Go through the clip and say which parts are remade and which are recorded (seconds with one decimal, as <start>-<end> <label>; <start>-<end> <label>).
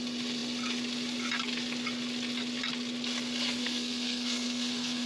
0.0-3.6 recorded; 3.6-5.1 remade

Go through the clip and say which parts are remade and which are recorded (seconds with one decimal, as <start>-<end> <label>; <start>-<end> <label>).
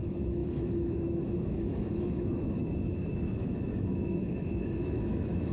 0.0-5.5 remade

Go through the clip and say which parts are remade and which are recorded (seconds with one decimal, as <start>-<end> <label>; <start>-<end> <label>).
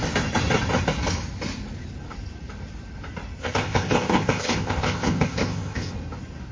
0.0-3.4 recorded; 3.4-5.9 remade; 5.9-6.5 recorded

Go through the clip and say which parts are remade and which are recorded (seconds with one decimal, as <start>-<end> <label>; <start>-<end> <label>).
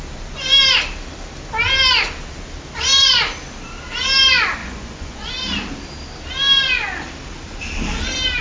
0.0-4.6 recorded; 4.6-5.3 remade; 5.3-8.4 recorded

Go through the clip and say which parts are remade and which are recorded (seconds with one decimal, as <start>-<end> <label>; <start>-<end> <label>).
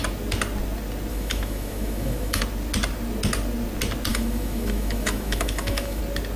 0.0-1.1 recorded; 1.1-2.4 remade; 2.4-4.1 recorded; 4.1-6.0 remade; 6.0-6.4 recorded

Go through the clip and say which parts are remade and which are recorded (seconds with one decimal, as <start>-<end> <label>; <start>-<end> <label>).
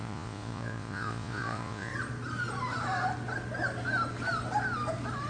0.0-1.9 remade; 1.9-5.3 recorded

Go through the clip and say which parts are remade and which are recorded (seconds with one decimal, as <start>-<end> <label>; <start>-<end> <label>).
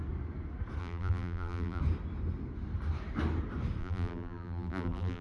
0.0-0.8 recorded; 0.8-1.8 remade; 1.8-3.8 recorded; 3.8-5.2 remade